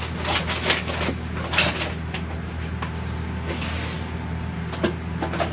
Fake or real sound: real